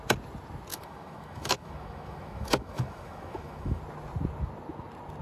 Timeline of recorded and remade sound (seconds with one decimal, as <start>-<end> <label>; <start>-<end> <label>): 0.0-0.7 recorded; 0.7-3.8 remade; 3.8-5.2 recorded